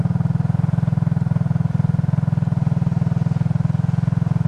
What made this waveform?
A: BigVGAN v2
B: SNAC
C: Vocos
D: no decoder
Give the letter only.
D